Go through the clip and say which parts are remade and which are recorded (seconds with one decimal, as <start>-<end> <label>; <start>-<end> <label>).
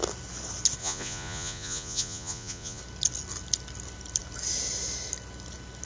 0.0-0.8 recorded; 0.8-2.8 remade; 2.8-5.8 recorded